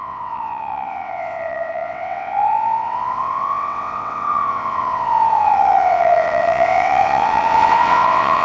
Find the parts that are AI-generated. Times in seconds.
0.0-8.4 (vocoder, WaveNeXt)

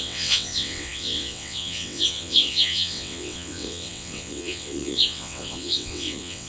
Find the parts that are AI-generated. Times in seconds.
0.0-6.5 (vocoder, WaveNeXt)

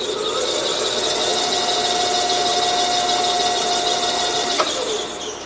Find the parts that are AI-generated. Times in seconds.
none

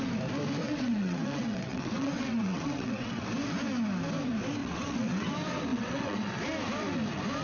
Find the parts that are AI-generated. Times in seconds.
0.6-3.2 (vocoder, WaveNeXt); 4.6-5.3; 5.7-6.4